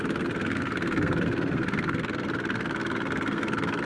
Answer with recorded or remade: remade